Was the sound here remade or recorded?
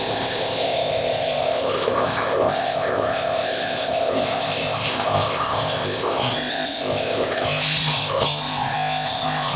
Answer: remade